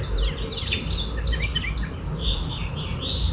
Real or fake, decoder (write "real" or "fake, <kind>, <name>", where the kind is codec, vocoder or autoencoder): real